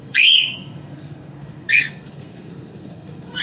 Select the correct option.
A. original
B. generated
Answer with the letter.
B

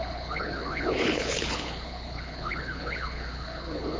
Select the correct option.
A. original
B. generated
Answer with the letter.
B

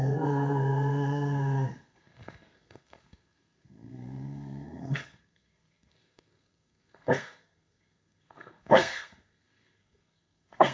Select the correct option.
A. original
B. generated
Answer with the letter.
B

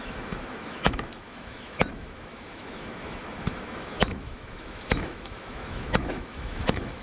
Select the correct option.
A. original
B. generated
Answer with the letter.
B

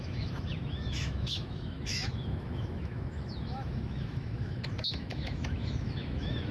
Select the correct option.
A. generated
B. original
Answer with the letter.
A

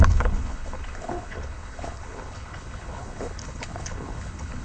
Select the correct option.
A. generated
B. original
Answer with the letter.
A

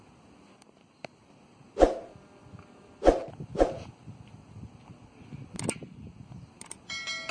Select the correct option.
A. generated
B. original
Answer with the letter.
B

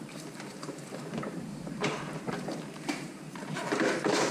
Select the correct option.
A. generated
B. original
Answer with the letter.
A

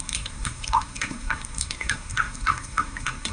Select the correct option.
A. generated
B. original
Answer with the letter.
A